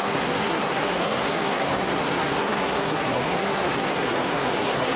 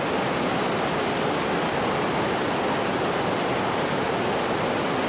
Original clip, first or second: second